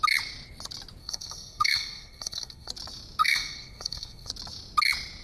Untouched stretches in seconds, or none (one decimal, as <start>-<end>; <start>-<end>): 0.0-1.0; 2.7-3.2; 4.3-5.2